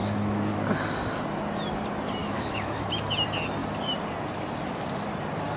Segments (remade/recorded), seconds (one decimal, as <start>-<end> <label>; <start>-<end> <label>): 0.0-0.5 remade; 0.5-2.2 recorded; 2.2-2.8 remade; 2.8-5.6 recorded